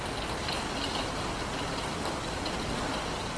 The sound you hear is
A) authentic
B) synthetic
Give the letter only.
A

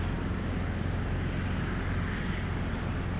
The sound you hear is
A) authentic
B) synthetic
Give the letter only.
A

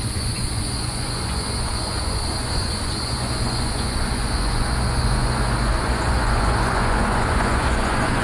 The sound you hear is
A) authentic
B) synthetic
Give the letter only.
B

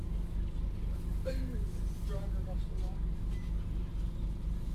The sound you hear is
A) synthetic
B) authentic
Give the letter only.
B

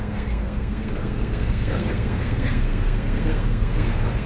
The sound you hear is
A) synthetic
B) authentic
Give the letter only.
A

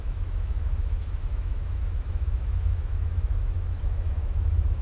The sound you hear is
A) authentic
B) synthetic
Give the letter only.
B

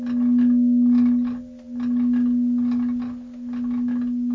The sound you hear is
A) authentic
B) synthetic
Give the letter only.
A